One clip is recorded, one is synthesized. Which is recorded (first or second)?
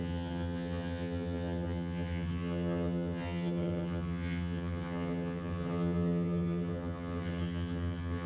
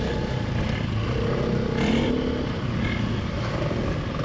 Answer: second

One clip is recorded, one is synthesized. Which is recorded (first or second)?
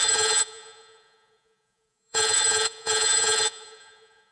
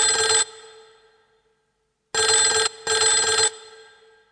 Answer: second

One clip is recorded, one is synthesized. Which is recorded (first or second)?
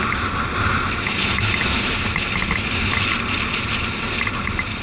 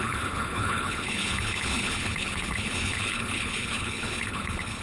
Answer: first